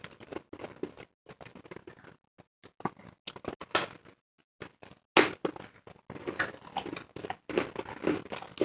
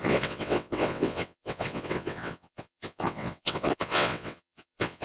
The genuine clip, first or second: first